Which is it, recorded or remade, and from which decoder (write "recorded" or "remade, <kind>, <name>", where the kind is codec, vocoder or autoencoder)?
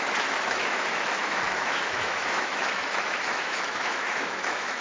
remade, autoencoder, DAC-VAE